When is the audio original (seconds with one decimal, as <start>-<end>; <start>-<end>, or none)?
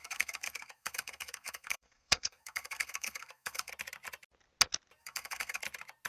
3.7-5.0; 5.6-6.1